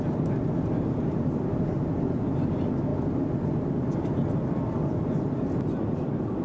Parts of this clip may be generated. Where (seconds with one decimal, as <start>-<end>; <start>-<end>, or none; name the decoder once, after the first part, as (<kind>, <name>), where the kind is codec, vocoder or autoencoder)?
none